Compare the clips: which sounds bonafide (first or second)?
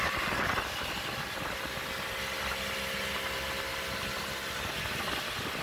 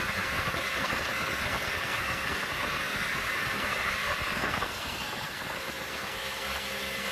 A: first